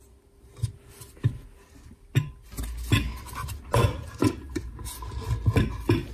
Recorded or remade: recorded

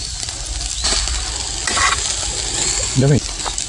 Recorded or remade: recorded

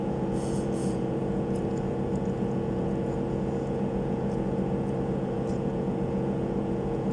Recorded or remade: remade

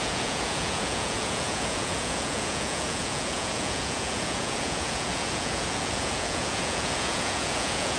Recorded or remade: remade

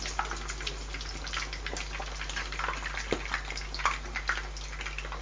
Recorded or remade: recorded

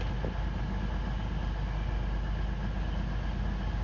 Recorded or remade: recorded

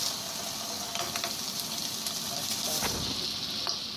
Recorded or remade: recorded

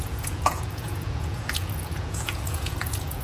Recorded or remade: remade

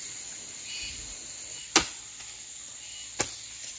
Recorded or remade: recorded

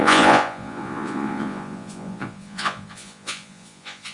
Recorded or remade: remade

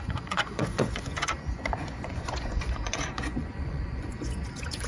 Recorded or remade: remade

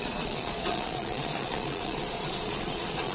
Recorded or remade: remade